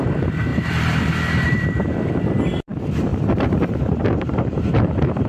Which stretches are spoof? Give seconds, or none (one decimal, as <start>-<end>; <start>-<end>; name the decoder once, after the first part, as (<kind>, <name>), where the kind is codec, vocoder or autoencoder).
0.5-2.2 (vocoder, BigVGAN v2); 3.1-5.3